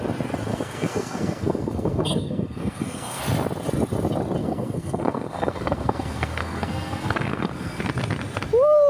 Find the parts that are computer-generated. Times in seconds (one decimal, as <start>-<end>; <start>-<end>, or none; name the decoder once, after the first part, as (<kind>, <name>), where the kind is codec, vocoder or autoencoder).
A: 0.5-3.2 (codec, SNAC); 4.4-7.8